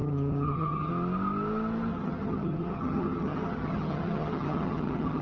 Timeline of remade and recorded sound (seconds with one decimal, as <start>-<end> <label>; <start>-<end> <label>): 0.0-0.9 remade; 0.9-1.9 recorded; 1.9-5.2 remade